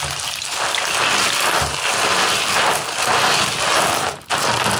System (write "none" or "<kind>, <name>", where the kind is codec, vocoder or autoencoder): none